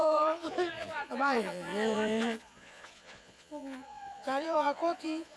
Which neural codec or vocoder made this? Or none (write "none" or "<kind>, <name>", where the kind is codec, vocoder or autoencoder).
vocoder, Vocos